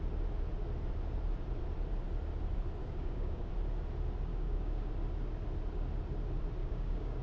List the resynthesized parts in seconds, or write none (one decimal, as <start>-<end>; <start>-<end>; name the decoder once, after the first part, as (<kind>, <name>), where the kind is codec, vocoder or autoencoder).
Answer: 2.8-3.5 (codec, DAC); 4.3-4.9; 6.6-7.2